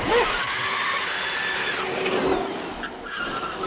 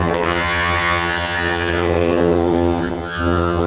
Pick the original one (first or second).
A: first